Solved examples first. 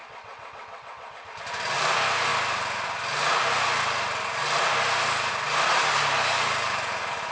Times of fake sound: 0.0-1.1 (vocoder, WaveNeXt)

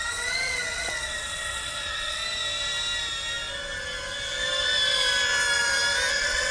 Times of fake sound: 0.0-2.2 (vocoder, WaveNeXt); 6.1-6.5

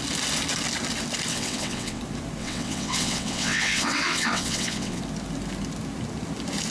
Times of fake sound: 1.3-2.0 (vocoder, WaveNeXt); 2.4-5.0

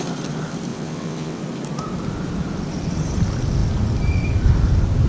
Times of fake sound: 0.7-1.4 (vocoder, WaveNeXt)

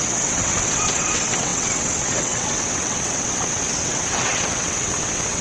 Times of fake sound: 0.0-5.4 (vocoder, WaveNeXt)

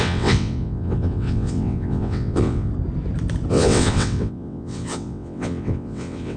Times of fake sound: 0.0-2.7 (vocoder, WaveNeXt); 3.5-6.4

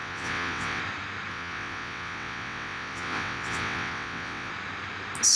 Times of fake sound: 0.0-0.8 (vocoder, WaveNeXt); 1.3-4.5

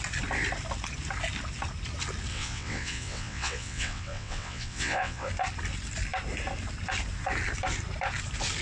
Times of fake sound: 2.3-5.3 (vocoder, WaveNeXt)